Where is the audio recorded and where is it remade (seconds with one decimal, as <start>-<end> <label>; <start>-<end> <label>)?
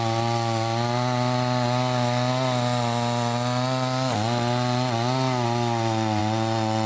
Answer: 0.0-6.9 recorded